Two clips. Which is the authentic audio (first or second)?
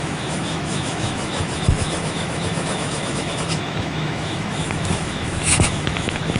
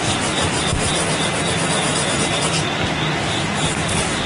second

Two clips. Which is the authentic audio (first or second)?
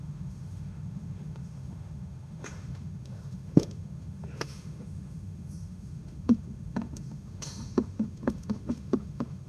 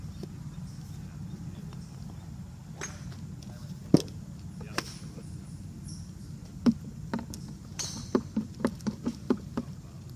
second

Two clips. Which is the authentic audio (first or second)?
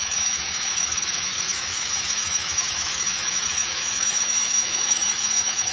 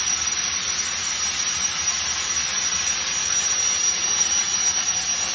second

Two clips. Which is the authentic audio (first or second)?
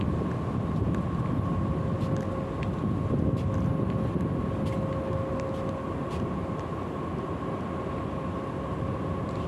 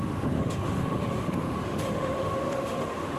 first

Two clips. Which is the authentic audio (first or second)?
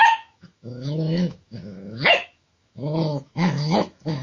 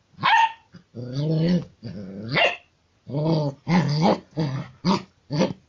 second